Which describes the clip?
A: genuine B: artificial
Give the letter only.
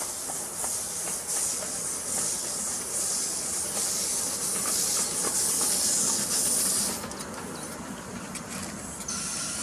A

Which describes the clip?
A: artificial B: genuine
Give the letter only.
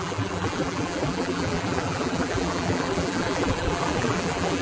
A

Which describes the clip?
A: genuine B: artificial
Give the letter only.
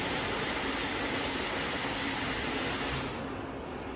A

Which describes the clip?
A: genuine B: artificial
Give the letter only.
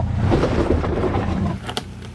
B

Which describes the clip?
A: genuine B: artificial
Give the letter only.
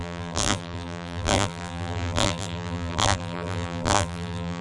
B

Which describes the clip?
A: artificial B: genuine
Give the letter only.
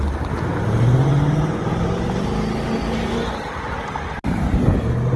B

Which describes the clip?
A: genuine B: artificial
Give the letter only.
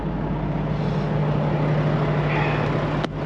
A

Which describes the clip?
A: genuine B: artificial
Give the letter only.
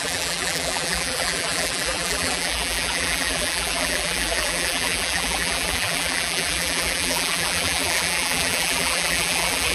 B